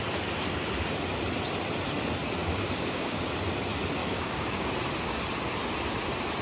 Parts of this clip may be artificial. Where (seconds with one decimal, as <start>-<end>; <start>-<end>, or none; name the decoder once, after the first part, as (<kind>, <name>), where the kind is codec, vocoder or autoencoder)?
2.4-3.2 (codec, DAC); 4.0-4.7

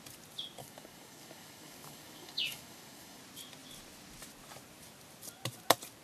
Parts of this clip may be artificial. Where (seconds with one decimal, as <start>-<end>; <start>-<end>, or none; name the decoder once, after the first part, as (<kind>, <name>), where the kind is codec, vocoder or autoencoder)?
0.6-3.2 (codec, DAC)

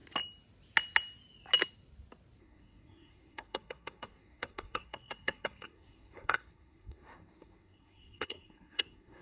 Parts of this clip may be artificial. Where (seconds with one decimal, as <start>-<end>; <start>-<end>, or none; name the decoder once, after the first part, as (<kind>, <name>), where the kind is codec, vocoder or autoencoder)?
2.4-9.2 (codec, SNAC)